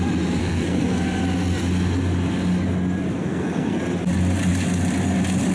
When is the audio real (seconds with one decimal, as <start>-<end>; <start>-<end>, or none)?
0.0-0.4; 1.2-3.2; 3.8-5.5